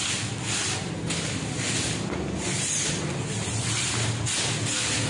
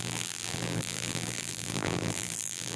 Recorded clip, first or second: first